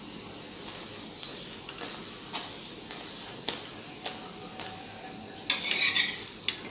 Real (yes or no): yes